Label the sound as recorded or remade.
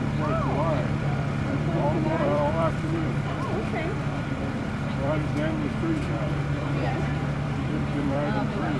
remade